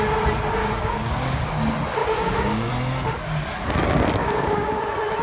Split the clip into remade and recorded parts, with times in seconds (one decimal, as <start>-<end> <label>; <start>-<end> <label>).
0.0-0.6 recorded; 0.6-1.5 remade; 1.5-2.0 recorded; 2.0-2.7 remade; 2.7-4.2 recorded; 4.2-4.8 remade; 4.8-5.2 recorded